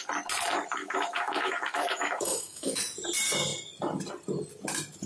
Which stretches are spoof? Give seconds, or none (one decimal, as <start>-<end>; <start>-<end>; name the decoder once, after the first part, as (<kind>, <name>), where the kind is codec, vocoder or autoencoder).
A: 0.8-2.8 (autoencoder, DAC-VAE)

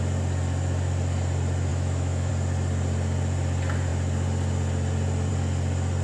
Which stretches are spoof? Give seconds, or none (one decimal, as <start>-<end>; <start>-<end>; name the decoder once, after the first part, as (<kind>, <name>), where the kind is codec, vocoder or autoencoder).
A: 1.7-2.3 (autoencoder, DAC-VAE)

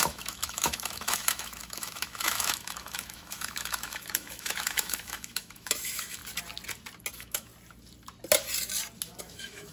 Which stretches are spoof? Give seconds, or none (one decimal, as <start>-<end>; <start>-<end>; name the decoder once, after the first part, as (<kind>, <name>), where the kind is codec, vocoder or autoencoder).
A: 0.0-6.2 (autoencoder, DAC-VAE); 7.1-7.5; 9.2-9.7

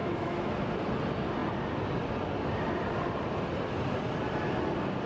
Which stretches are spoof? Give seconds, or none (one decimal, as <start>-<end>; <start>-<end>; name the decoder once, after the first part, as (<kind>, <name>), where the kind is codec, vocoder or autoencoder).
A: 0.0-0.5 (autoencoder, DAC-VAE)

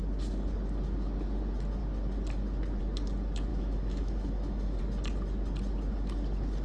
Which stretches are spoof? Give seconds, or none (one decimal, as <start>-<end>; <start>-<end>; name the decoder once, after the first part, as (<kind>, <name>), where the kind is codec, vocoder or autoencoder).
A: 3.5-4.8 (autoencoder, DAC-VAE)

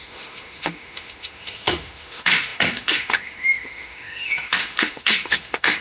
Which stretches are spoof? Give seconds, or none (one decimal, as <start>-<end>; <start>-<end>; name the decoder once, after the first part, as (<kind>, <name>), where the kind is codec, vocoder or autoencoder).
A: 0.0-5.8 (autoencoder, DAC-VAE)

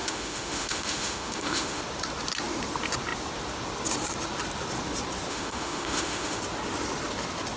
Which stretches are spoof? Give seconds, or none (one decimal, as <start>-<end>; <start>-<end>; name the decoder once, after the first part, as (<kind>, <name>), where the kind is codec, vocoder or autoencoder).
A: 0.0-1.8 (autoencoder, DAC-VAE); 5.3-6.4

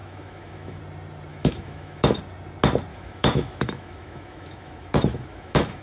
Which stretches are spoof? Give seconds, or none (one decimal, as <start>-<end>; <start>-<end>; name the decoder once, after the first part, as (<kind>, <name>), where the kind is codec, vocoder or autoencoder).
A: 0.0-0.8 (autoencoder, DAC-VAE); 1.3-2.2; 2.9-5.8